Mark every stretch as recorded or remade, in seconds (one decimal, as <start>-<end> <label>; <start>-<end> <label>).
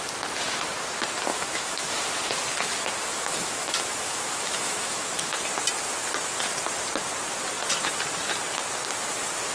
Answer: 0.0-1.3 recorded; 1.3-2.0 remade; 2.0-3.1 recorded; 3.1-5.3 remade; 5.3-9.5 recorded